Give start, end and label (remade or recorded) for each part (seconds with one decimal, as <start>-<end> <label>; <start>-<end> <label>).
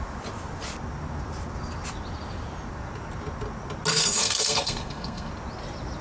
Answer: 0.0-3.9 recorded; 3.9-5.3 remade; 5.3-6.0 recorded